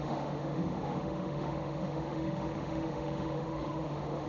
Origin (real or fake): fake